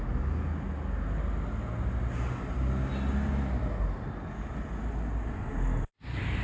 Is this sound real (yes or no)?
yes